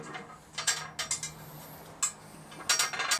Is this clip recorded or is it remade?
recorded